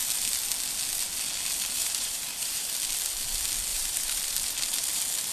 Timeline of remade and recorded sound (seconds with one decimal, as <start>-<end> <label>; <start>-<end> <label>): 0.0-1.8 recorded; 1.8-2.7 remade; 2.7-3.7 recorded; 3.7-4.2 remade; 4.2-5.3 recorded